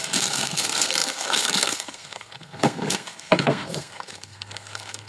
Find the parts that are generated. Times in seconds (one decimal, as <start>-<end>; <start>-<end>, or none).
0.0-5.1